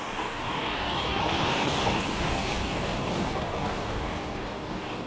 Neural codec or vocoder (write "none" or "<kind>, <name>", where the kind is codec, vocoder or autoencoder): codec, DAC